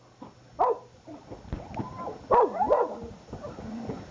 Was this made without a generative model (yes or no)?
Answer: yes